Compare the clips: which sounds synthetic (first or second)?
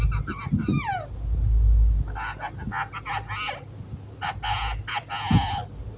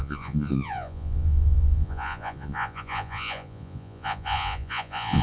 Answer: second